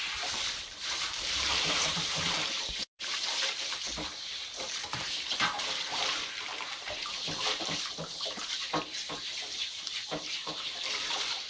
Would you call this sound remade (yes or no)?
yes